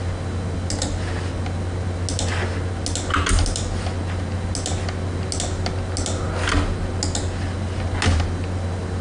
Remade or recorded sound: recorded